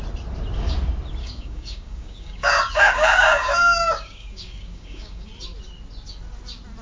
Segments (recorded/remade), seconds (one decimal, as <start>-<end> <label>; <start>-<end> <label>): 0.0-1.2 recorded; 1.2-5.3 remade; 5.3-6.8 recorded